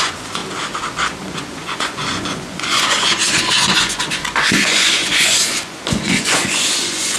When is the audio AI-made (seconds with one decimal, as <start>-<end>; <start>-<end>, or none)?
0.0-0.4; 1.2-7.2